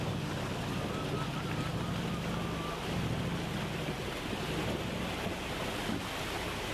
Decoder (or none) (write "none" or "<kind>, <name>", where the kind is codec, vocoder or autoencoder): none